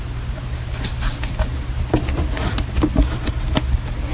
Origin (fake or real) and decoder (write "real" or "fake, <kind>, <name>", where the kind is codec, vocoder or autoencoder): real